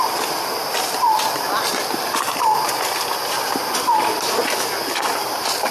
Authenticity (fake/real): real